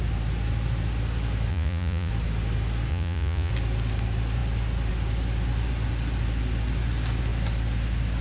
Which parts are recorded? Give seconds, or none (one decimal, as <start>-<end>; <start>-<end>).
0.0-1.5; 2.1-2.9; 3.5-8.2